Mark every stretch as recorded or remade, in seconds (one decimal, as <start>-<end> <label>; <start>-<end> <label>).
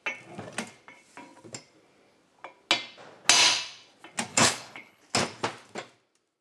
0.0-4.3 recorded; 4.3-5.0 remade; 5.0-6.4 recorded